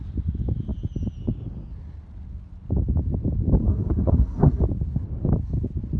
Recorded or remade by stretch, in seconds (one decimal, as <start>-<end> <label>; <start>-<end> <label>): 0.0-3.7 recorded; 3.7-4.6 remade; 4.6-6.0 recorded